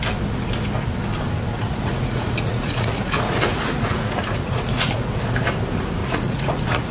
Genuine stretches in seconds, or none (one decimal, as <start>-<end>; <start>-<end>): 0.0-1.5; 4.9-6.0